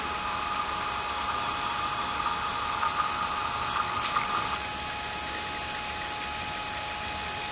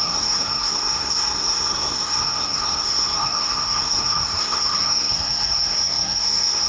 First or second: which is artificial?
second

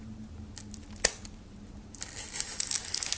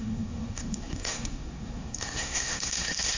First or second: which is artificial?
second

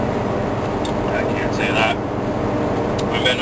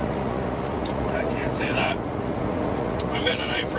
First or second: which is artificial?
second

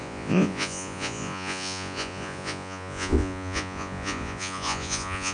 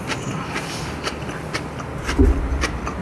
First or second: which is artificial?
first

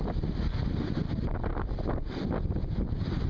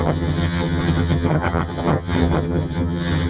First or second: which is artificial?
second